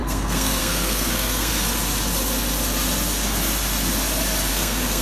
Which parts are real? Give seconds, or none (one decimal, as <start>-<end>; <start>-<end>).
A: 1.5-4.5